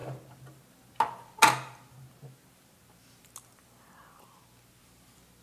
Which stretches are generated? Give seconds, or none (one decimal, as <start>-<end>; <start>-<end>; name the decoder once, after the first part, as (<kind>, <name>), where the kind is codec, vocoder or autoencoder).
none